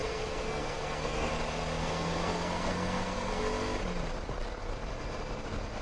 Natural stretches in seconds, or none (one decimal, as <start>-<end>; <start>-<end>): 1.3-1.8; 3.4-5.8